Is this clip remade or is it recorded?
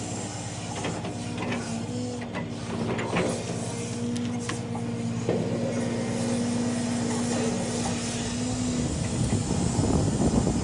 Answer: recorded